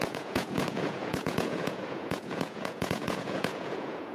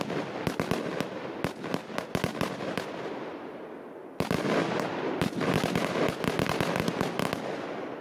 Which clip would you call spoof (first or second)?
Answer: first